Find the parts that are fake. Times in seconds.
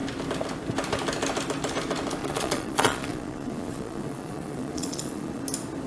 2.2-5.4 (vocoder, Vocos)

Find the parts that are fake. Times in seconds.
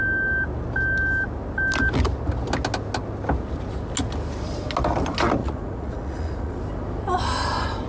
5.4-6.6 (vocoder, Vocos)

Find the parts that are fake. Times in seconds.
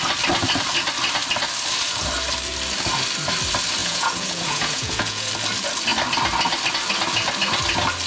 3.8-5.3 (vocoder, Vocos)